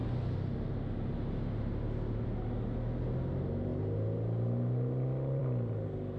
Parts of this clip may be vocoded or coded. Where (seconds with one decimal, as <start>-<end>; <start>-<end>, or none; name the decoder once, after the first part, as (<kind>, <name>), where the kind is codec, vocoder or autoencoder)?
none